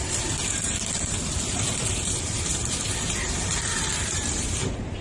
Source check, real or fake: fake